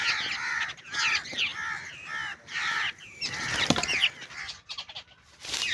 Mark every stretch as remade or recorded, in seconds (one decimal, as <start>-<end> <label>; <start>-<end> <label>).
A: 0.0-1.5 recorded; 1.5-4.9 remade; 4.9-5.7 recorded